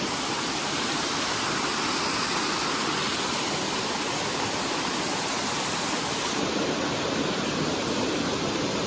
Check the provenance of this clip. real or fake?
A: real